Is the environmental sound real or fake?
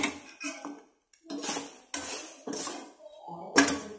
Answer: real